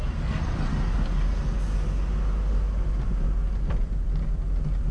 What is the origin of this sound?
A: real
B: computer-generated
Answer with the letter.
A